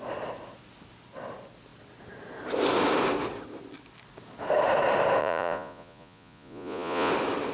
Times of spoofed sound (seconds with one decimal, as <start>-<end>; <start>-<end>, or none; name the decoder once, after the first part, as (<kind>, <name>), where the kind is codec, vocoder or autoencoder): 5.2-7.1 (vocoder, Vocos)